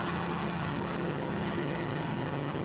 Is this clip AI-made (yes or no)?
yes